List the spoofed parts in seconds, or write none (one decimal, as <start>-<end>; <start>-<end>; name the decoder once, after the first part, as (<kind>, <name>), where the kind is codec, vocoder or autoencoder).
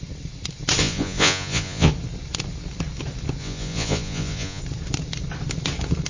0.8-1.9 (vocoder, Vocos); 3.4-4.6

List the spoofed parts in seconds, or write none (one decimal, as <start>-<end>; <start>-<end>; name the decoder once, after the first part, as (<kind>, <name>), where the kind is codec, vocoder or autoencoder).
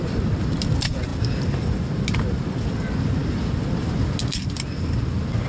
none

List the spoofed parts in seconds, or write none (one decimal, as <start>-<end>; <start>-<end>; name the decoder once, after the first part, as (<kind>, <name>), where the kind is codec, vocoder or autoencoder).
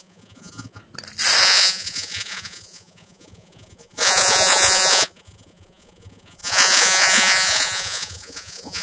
0.0-0.8 (vocoder, Vocos); 1.4-8.8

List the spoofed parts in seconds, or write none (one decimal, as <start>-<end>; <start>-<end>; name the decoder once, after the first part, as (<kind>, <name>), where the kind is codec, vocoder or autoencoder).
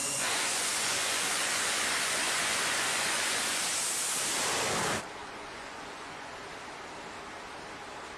0.0-3.6 (vocoder, Vocos); 5.2-6.3